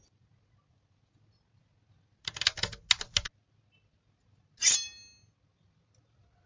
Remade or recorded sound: recorded